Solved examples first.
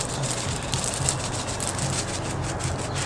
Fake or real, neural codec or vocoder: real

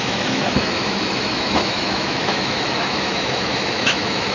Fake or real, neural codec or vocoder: fake, autoencoder, DAC-VAE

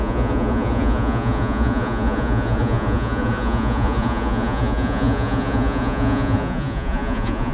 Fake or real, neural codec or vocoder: fake, vocoder, Vocos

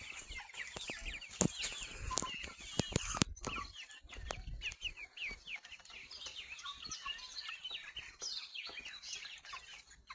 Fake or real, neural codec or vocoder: real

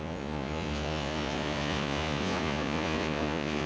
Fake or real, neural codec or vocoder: fake, vocoder, Vocos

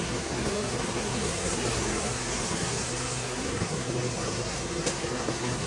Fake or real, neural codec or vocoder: fake, codec, SNAC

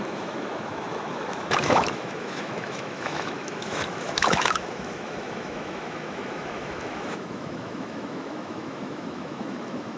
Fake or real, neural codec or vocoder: fake, autoencoder, DAC-VAE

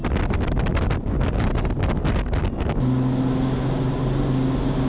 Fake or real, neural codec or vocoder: real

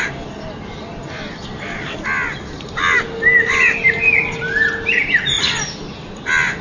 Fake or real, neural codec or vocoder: real